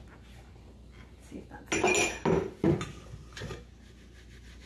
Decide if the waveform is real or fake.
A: real